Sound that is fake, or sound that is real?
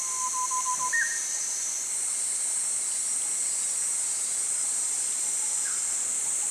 real